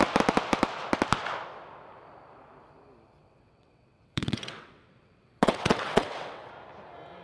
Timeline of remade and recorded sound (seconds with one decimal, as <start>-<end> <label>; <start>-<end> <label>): 0.0-3.2 recorded; 3.2-6.5 remade; 6.5-7.2 recorded